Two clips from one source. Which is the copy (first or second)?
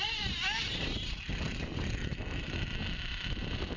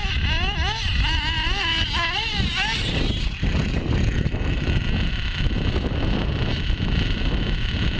first